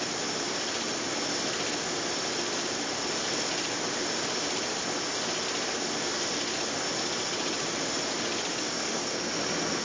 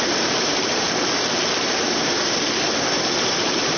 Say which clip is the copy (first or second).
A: second